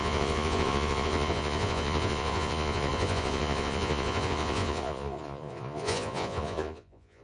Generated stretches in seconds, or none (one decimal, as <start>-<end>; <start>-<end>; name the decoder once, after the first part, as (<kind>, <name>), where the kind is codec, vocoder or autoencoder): 0.0-7.2 (vocoder, Vocos)

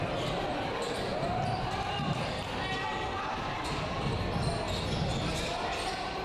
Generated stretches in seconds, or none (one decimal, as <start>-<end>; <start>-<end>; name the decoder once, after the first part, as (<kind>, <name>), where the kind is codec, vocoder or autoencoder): none

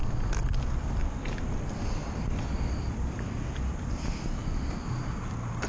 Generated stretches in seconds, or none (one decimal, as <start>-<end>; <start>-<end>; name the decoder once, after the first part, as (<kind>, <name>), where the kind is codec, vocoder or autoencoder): none

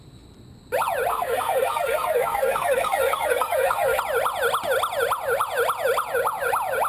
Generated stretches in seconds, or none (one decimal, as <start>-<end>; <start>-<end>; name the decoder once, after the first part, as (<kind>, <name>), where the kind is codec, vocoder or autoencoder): 1.1-4.0 (codec, SNAC)

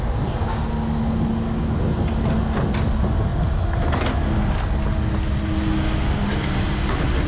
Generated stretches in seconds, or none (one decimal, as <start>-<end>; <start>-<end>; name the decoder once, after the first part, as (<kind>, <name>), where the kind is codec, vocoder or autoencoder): none

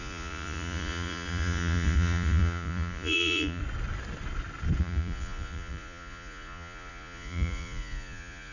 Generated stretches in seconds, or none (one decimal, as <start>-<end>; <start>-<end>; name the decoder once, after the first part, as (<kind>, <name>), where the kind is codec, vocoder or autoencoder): 0.0-3.6 (vocoder, Vocos); 4.8-8.5

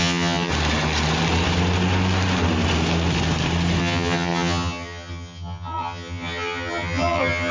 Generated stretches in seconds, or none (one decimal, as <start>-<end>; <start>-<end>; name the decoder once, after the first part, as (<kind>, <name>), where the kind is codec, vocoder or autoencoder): 0.0-0.5 (vocoder, HiFi-GAN); 3.8-7.5